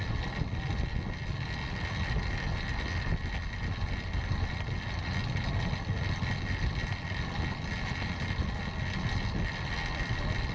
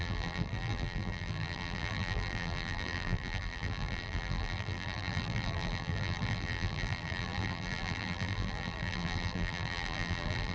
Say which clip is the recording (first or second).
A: first